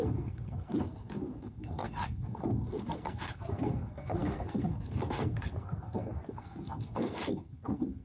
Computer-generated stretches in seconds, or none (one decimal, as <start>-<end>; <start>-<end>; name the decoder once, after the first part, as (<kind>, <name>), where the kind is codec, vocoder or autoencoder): 0.0-8.0 (codec, SNAC)